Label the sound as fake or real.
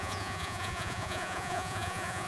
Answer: fake